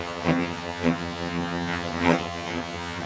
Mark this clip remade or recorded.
remade